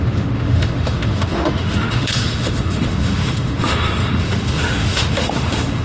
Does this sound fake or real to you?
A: fake